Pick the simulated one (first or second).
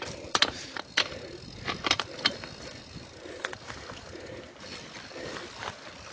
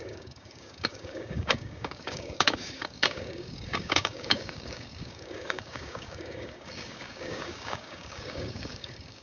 second